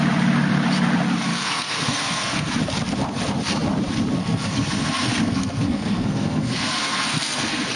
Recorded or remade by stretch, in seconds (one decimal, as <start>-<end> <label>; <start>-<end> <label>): 0.0-1.3 recorded; 1.3-2.5 remade; 2.5-4.2 recorded; 4.2-7.8 remade